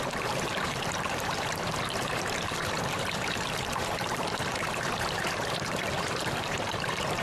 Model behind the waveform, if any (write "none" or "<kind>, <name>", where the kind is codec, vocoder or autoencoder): vocoder, BigVGAN v2